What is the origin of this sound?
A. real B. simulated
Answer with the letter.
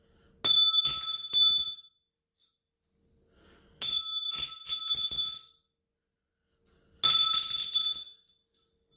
A